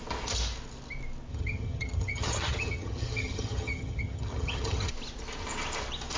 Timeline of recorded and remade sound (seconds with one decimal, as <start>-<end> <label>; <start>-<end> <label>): 0.0-1.3 recorded; 1.3-4.9 remade; 4.9-6.2 recorded